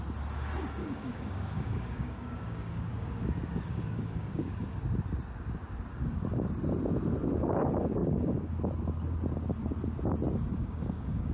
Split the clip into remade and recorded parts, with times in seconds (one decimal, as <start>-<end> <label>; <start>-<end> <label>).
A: 0.0-0.8 recorded; 0.8-4.8 remade; 4.8-5.9 recorded; 5.9-6.5 remade; 6.5-8.0 recorded; 8.0-8.5 remade; 8.5-10.5 recorded; 10.5-11.3 remade